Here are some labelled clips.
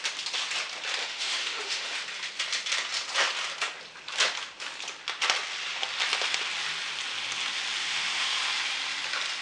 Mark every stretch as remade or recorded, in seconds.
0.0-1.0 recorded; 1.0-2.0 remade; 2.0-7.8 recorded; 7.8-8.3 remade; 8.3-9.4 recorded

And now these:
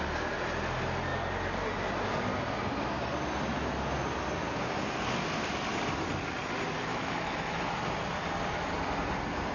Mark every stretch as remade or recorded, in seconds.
0.0-6.9 recorded; 6.9-7.6 remade; 7.6-9.5 recorded

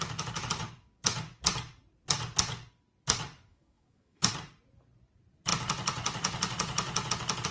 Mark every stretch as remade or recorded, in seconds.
0.0-3.5 recorded; 3.5-4.3 remade; 4.3-7.5 recorded

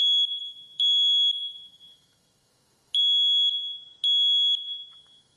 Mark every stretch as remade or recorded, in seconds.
0.0-3.0 remade; 3.0-4.9 recorded; 4.9-5.4 remade

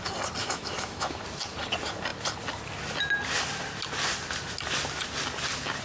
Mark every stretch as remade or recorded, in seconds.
0.0-0.4 recorded; 0.4-1.2 remade; 1.2-5.8 recorded

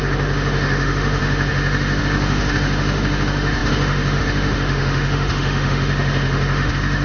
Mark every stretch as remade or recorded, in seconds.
0.0-7.0 remade

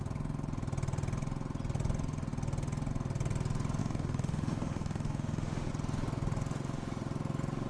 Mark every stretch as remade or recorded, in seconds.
0.0-3.8 recorded; 3.8-5.7 remade; 5.7-7.7 recorded

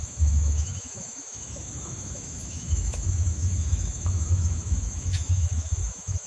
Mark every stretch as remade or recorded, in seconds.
0.0-6.3 remade